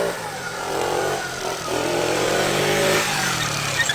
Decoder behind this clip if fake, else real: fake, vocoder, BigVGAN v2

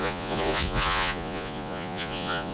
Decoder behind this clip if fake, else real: fake, vocoder, Vocos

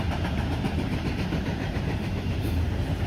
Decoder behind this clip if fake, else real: fake, vocoder, BigVGAN v2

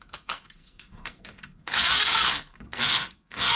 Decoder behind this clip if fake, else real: fake, codec, SNAC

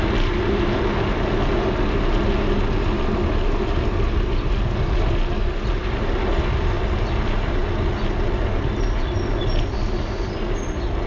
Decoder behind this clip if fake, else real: real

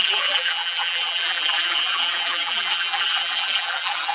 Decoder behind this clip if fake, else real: fake, vocoder, BigVGAN v2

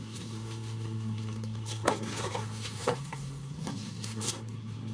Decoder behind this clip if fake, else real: fake, codec, SNAC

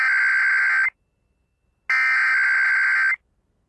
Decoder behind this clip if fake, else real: real